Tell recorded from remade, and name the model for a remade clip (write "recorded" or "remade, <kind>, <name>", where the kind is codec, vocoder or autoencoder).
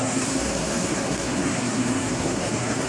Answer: remade, codec, SNAC